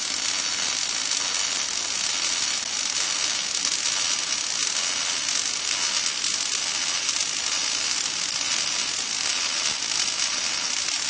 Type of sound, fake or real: real